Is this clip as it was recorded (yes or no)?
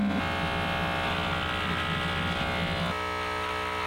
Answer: yes